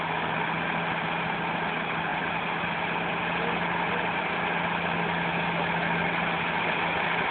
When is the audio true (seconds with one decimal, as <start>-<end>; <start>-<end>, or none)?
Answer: 0.0-7.3